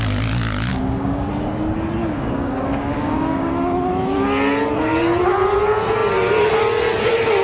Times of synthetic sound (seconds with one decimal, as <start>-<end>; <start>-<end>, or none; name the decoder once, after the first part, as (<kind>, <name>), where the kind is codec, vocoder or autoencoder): 0.7-1.3 (codec, DAC); 2.0-3.5